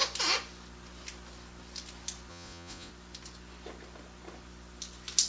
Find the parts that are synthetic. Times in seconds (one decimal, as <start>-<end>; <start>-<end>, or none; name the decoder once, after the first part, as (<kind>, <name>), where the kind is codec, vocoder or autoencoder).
2.3-2.9 (vocoder, Vocos)